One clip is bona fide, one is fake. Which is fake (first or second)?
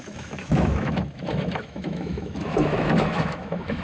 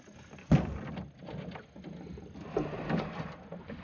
first